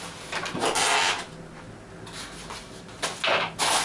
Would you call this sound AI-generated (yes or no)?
no